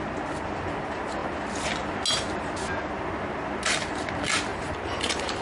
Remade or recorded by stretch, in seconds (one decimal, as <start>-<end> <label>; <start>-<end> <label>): 0.0-4.5 recorded; 4.5-5.4 remade